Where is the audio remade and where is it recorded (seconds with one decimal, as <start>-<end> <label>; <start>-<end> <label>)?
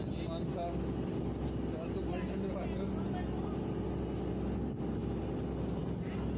0.0-6.4 recorded